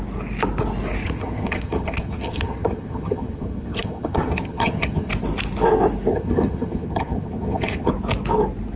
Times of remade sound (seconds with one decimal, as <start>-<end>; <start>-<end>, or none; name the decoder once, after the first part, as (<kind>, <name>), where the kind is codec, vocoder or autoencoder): 1.0-5.1 (vocoder, HiFi-GAN); 6.1-7.9

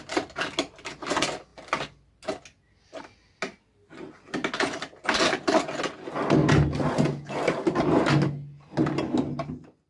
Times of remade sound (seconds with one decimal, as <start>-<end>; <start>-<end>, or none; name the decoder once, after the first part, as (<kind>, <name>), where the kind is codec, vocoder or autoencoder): none

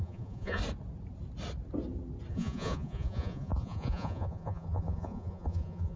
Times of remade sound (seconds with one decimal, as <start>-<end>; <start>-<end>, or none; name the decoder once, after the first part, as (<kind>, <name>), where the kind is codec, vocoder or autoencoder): 0.0-0.6 (vocoder, Vocos); 2.3-6.0

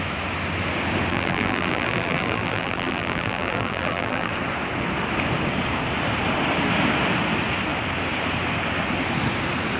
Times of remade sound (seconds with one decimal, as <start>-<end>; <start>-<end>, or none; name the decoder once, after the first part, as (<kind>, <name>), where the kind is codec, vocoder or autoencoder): 1.1-4.3 (vocoder, BigVGAN v2)

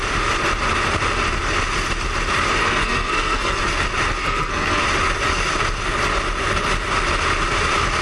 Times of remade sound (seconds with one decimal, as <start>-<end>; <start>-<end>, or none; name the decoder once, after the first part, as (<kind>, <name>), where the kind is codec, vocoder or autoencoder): 2.6-3.6 (codec, SNAC); 4.2-4.8